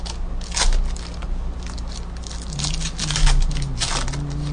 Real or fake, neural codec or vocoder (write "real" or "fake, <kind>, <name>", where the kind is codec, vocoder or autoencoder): real